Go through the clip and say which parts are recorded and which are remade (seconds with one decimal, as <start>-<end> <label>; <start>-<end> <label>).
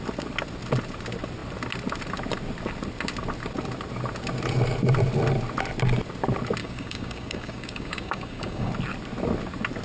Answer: 0.0-6.6 recorded; 6.6-8.7 remade; 8.7-9.8 recorded